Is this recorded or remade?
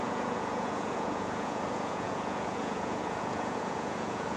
remade